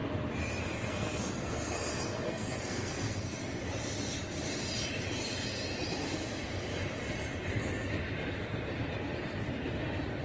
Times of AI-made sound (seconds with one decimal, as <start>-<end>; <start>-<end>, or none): 0.6-3.4; 7.5-8.0